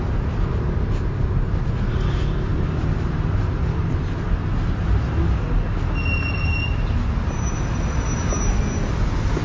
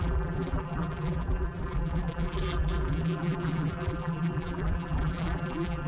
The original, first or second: first